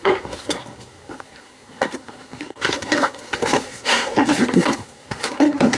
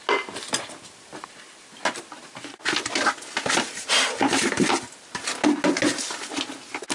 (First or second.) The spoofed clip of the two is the first